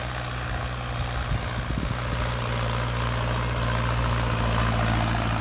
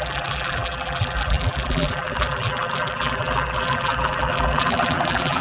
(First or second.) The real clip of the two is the first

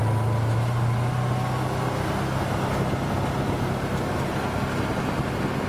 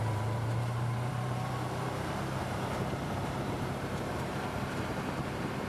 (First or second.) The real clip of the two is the first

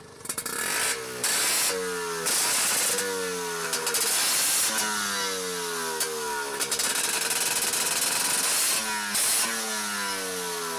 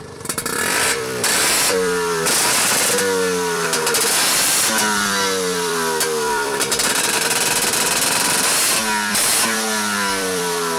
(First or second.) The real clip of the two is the first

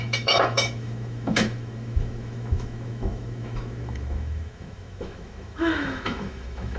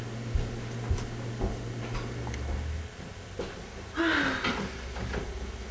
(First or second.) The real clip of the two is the second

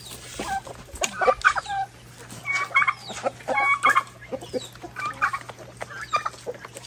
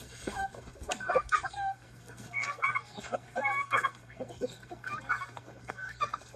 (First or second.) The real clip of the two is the first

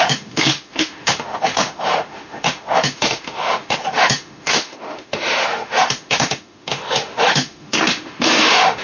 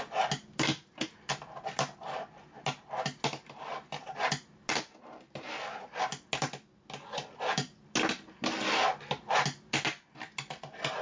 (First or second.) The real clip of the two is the second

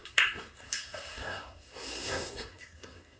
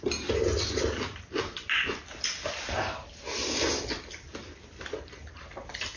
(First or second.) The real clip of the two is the second